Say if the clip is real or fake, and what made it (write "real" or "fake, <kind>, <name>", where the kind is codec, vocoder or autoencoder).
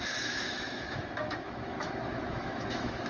fake, autoencoder, DAC-VAE